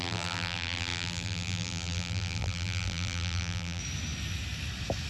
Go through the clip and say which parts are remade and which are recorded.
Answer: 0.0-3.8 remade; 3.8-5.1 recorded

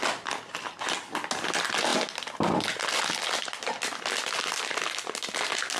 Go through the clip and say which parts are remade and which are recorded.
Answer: 0.0-5.8 recorded

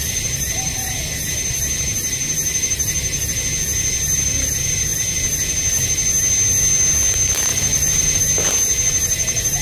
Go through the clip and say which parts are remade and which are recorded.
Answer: 0.0-7.5 recorded; 7.5-8.2 remade; 8.2-9.6 recorded

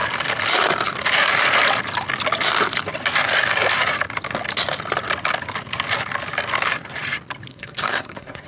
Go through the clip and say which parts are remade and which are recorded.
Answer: 0.0-7.5 recorded; 7.5-8.5 remade

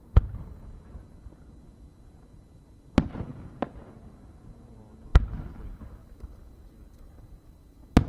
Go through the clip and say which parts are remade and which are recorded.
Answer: 0.0-8.1 recorded

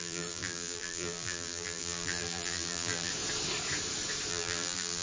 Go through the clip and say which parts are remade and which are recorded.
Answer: 0.0-3.1 remade; 3.1-4.3 recorded; 4.3-5.0 remade

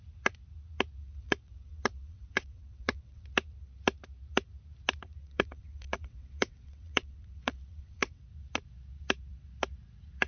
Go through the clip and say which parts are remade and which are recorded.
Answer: 0.0-1.0 recorded; 1.0-3.2 remade; 3.2-5.2 recorded; 5.2-8.2 remade; 8.2-10.3 recorded

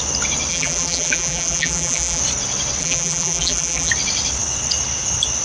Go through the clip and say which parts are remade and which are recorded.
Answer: 0.0-0.5 recorded; 0.5-2.2 remade; 2.2-2.8 recorded; 2.8-3.9 remade; 3.9-5.4 recorded